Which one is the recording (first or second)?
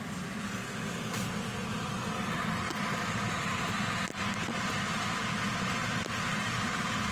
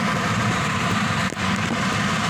first